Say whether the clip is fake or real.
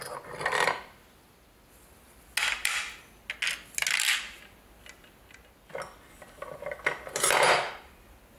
real